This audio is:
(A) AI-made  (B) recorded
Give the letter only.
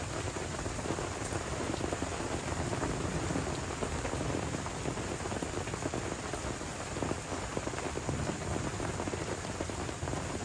B